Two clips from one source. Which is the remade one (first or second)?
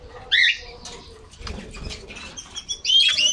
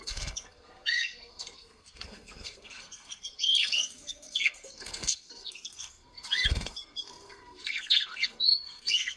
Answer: second